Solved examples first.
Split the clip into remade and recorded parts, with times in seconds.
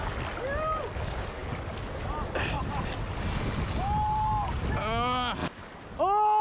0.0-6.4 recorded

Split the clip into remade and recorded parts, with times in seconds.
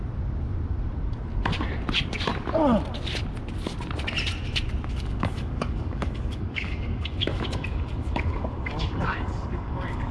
0.0-4.9 recorded; 4.9-10.1 remade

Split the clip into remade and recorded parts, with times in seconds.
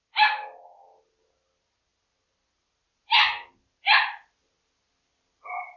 0.0-5.8 recorded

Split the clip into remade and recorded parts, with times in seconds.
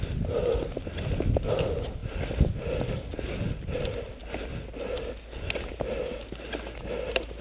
0.0-7.4 recorded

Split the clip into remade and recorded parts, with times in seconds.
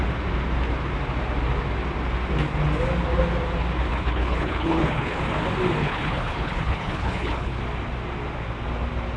0.0-3.9 recorded; 3.9-5.2 remade; 5.2-5.8 recorded; 5.8-7.6 remade; 7.6-9.2 recorded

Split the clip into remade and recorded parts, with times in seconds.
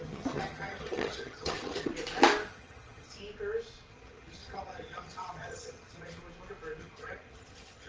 0.0-1.9 remade; 1.9-2.5 recorded; 2.5-3.2 remade; 3.2-3.9 recorded; 3.9-6.2 remade; 6.2-6.8 recorded; 6.8-7.9 remade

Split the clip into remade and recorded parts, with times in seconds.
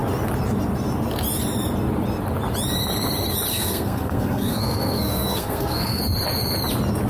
0.0-3.5 recorded; 3.5-6.0 remade; 6.0-7.1 recorded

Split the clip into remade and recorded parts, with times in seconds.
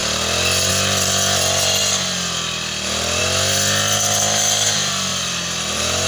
0.0-5.1 recorded; 5.1-6.1 remade